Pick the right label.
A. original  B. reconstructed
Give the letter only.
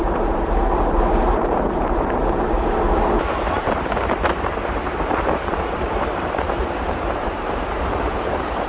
B